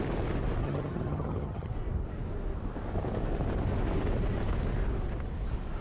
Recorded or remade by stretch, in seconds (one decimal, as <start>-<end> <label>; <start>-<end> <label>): 0.0-0.6 recorded; 0.6-1.7 remade; 1.7-5.8 recorded